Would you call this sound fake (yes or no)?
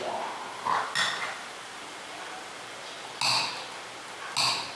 no